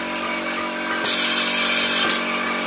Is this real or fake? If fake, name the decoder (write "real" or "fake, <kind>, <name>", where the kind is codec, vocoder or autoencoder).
real